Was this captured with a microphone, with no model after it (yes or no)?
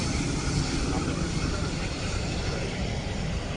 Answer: yes